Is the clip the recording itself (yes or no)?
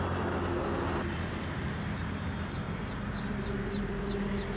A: yes